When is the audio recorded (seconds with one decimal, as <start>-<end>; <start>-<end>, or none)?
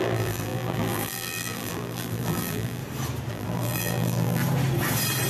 2.8-3.3; 4.4-5.3